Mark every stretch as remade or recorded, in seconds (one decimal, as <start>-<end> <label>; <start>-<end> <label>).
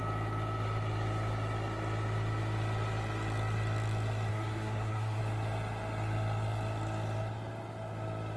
0.0-4.3 recorded; 4.3-5.2 remade; 5.2-8.4 recorded